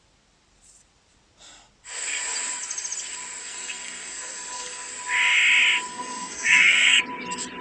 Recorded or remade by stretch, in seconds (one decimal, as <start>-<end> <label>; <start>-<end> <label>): 0.0-3.4 recorded; 3.4-4.9 remade; 4.9-5.9 recorded; 5.9-7.0 remade; 7.0-7.6 recorded